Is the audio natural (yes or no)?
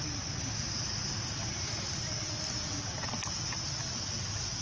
yes